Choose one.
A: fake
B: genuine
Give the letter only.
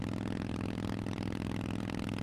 B